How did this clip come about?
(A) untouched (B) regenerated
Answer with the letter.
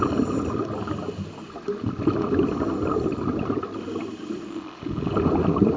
A